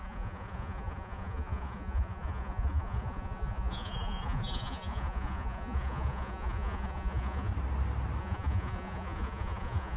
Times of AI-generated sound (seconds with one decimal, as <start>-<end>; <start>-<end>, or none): 0.0-7.5; 8.2-10.0